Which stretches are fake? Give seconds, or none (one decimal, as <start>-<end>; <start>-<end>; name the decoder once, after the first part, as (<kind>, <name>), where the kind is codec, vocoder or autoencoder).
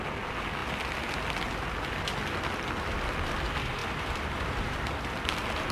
none